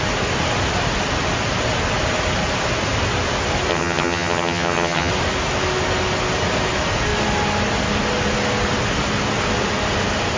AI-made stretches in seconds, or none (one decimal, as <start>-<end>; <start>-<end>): 3.7-5.1